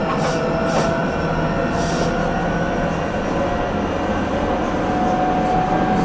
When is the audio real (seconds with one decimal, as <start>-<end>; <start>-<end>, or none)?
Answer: 0.0-6.0